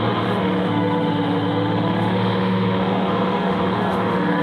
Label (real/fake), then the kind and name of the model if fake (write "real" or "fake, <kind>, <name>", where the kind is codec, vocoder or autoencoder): fake, autoencoder, DAC-VAE